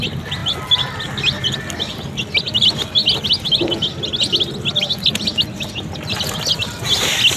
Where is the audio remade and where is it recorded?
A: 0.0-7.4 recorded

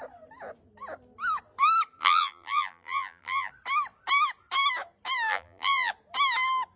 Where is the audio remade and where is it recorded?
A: 0.0-2.0 recorded; 2.0-3.5 remade; 3.5-5.3 recorded; 5.3-5.9 remade; 5.9-6.8 recorded

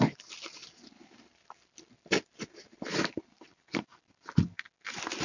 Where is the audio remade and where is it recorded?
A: 0.0-5.2 recorded

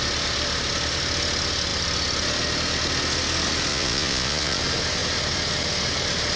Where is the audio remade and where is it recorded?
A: 0.0-3.7 recorded; 3.7-4.6 remade; 4.6-6.4 recorded

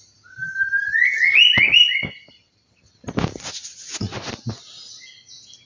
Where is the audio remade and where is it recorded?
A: 0.0-5.7 recorded

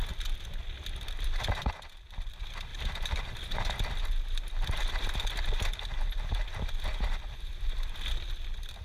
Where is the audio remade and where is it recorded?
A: 0.0-2.7 recorded; 2.7-3.7 remade; 3.7-8.8 recorded

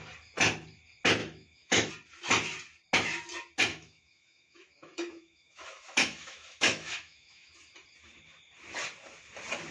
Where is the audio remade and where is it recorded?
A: 0.0-1.2 recorded; 1.2-1.9 remade; 1.9-3.7 recorded; 3.7-7.5 remade; 7.5-9.7 recorded